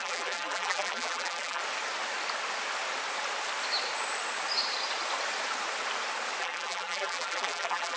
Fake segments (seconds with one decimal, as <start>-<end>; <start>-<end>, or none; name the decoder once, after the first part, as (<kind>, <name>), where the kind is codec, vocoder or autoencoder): 0.0-1.6 (vocoder, BigVGAN v2); 6.4-8.0